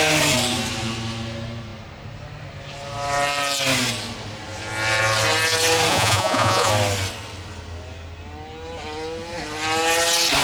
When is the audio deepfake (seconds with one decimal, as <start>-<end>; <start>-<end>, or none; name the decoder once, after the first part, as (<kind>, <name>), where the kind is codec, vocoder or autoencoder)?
5.9-6.7 (vocoder, Vocos)